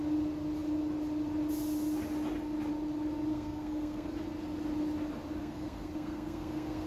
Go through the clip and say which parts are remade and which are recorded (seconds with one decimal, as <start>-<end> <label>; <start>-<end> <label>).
0.0-3.3 recorded; 3.3-4.1 remade; 4.1-5.4 recorded; 5.4-6.9 remade